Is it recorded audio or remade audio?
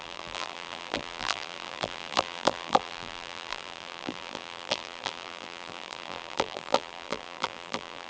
remade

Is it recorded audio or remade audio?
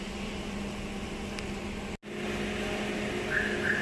recorded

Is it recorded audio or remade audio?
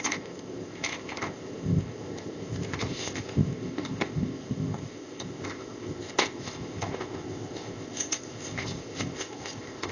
remade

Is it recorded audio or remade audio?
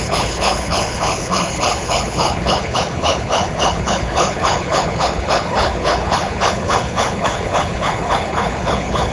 remade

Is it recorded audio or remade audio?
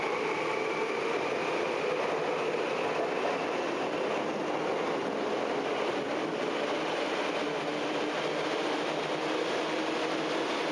recorded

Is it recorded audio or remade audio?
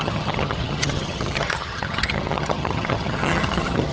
remade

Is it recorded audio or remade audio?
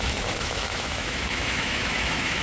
remade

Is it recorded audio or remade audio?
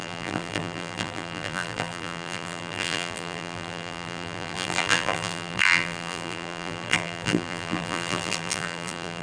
remade